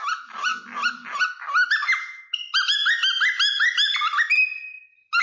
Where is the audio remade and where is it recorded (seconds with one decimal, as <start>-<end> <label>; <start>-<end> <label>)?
0.0-5.2 recorded